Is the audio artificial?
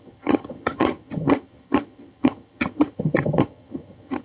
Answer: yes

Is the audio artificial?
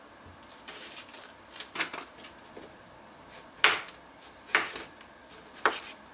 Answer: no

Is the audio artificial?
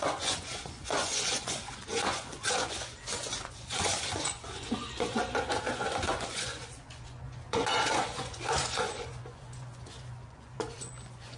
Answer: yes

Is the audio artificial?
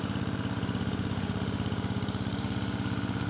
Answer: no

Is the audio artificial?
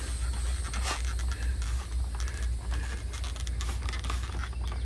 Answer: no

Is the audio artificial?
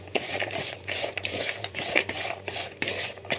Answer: yes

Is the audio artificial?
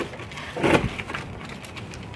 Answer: no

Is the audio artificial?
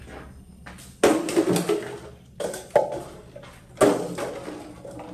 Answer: no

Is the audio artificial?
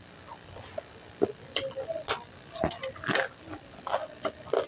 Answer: no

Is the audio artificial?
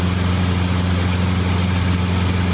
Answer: no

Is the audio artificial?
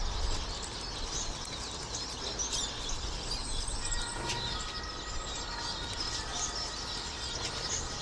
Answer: no